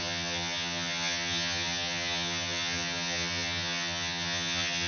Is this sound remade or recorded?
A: remade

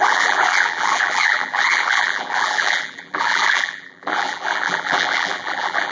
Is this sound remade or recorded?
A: remade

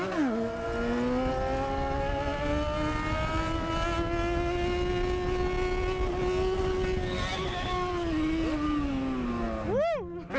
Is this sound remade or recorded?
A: recorded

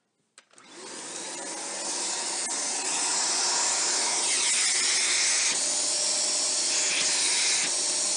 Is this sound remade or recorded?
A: recorded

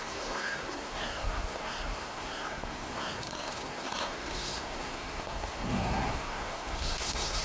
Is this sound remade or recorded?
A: remade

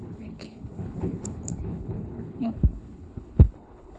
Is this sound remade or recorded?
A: remade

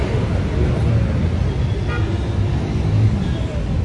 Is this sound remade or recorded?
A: recorded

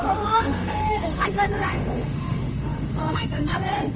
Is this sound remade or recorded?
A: remade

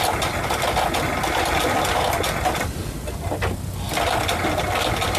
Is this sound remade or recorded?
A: recorded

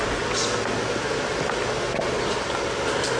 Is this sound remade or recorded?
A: recorded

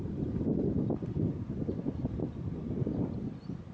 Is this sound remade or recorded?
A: recorded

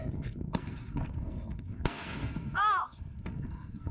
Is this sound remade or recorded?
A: remade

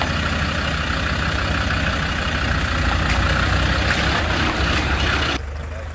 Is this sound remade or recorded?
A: recorded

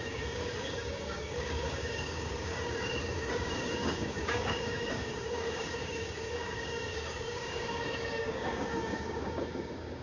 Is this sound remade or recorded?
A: remade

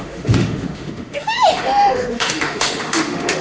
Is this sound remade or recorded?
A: remade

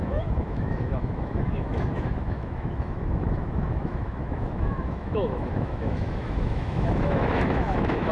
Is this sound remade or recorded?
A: remade